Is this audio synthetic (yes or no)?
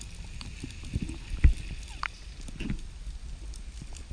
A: no